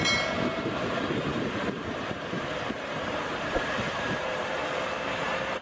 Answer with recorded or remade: remade